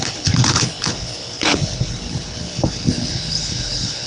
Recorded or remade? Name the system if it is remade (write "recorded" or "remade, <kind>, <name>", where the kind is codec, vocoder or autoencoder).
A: remade, codec, HILCodec